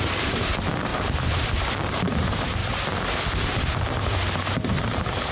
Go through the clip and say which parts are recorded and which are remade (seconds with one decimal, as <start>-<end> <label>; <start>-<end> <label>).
0.0-2.6 remade; 2.6-3.5 recorded; 3.5-5.3 remade